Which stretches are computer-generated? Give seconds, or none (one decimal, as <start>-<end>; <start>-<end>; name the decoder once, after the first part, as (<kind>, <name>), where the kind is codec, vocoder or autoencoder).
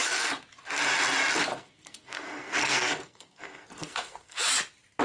1.5-4.5 (codec, SNAC)